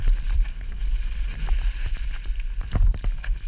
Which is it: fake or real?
real